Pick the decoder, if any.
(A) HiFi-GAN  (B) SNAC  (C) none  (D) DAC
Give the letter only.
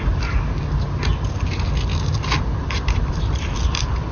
C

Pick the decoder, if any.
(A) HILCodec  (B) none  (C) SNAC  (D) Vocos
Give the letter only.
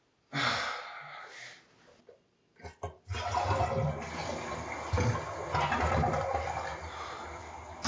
B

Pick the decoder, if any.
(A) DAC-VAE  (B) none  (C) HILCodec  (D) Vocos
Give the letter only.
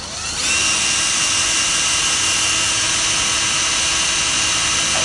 B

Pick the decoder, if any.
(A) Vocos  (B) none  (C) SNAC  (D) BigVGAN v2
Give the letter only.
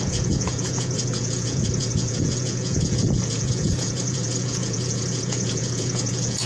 A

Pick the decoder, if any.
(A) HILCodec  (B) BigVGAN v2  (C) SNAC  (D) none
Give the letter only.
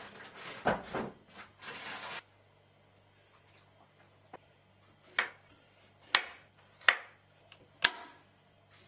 D